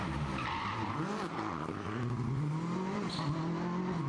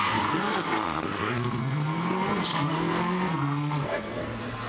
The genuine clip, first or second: first